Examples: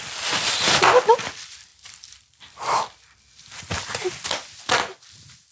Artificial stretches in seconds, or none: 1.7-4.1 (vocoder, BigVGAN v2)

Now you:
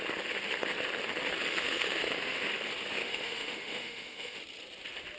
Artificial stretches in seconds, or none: 1.6-2.5 (autoencoder, DAC-VAE); 3.0-4.4

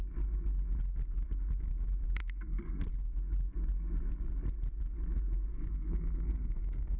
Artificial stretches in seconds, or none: 2.2-2.8 (codec, SNAC); 5.5-7.0

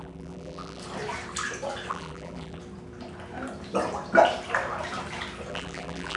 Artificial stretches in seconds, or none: 0.0-0.8 (vocoder, BigVGAN v2); 1.9-2.6; 5.5-6.2